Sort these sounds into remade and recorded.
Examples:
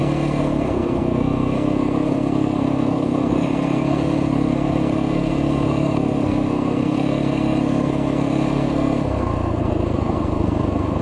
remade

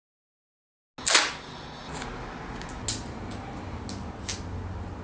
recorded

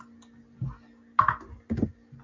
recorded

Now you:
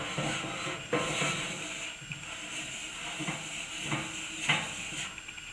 recorded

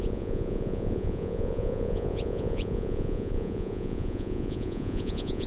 remade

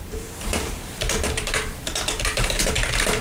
remade